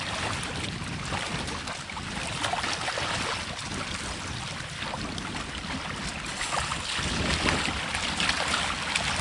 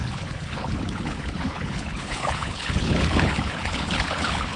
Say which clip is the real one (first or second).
first